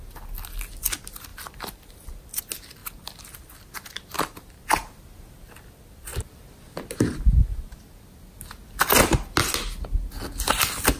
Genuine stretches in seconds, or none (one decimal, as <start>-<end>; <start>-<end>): 0.0-11.0